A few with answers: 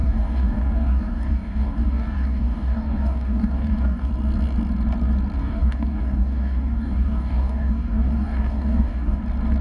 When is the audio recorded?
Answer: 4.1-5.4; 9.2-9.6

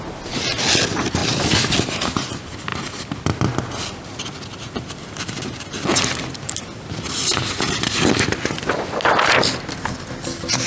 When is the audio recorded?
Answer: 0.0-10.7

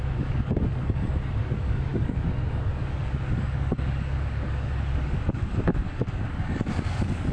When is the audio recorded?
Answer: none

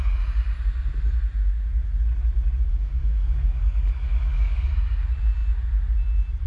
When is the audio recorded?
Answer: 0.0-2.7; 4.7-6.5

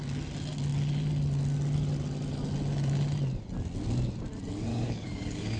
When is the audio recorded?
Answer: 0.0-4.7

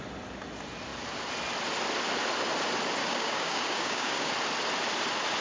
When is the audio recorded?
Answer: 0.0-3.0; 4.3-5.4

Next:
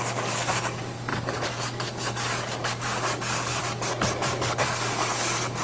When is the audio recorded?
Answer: none